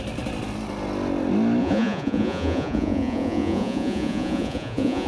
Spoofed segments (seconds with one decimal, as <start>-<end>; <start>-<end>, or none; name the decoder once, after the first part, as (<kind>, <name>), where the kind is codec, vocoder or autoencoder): 1.6-5.1 (vocoder, Vocos)